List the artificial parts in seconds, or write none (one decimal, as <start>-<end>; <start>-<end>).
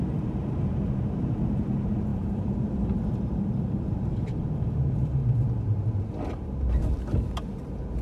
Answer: 2.1-4.9